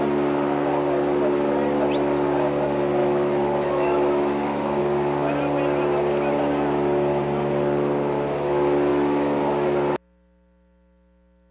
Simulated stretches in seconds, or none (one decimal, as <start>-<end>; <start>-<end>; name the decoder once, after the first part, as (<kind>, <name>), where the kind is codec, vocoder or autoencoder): 3.0-4.8 (autoencoder, DAC-VAE); 8.9-9.4